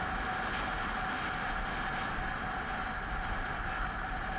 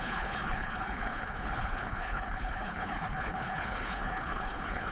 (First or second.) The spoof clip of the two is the second